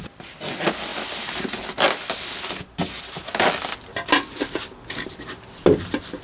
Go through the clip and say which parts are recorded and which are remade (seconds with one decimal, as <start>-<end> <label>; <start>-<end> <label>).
0.0-6.2 recorded